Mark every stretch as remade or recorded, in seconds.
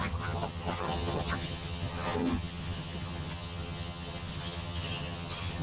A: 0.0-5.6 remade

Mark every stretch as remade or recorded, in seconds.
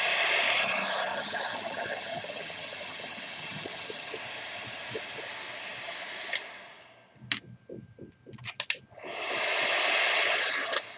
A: 0.0-1.1 recorded; 1.1-4.1 remade; 4.1-11.0 recorded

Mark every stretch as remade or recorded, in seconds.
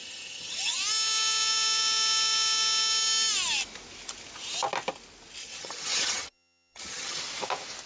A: 0.0-0.8 remade; 0.8-5.4 recorded; 5.4-7.2 remade; 7.2-7.9 recorded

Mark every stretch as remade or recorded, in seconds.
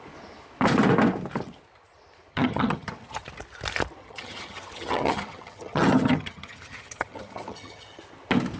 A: 0.0-2.3 recorded; 2.3-2.9 remade; 2.9-4.0 recorded; 4.0-8.0 remade; 8.0-8.6 recorded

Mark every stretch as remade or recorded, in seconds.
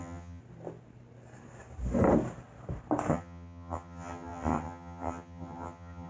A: 0.0-0.4 remade; 0.4-3.1 recorded; 3.1-6.1 remade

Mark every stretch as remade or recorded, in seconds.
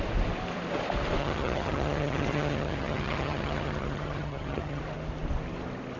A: 0.0-1.2 recorded; 1.2-4.8 remade; 4.8-6.0 recorded